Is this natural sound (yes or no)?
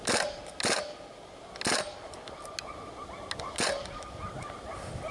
yes